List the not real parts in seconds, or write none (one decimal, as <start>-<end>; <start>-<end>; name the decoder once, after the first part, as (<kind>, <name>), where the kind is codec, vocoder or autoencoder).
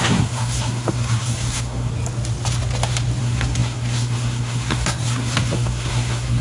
0.0-1.9 (codec, SNAC); 3.2-6.4